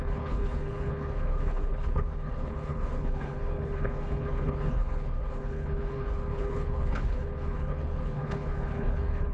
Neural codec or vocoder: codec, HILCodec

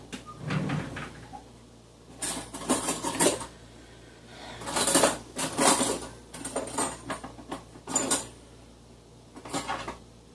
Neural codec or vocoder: none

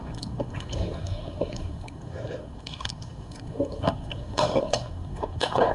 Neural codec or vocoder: codec, SNAC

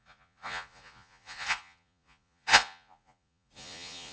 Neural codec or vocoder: vocoder, Vocos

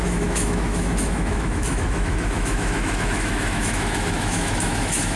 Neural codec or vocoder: autoencoder, DAC-VAE